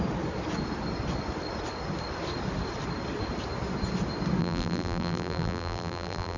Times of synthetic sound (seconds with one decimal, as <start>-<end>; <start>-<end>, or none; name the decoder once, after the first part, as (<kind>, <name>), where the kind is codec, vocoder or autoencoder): 4.4-6.4 (vocoder, BigVGAN v2)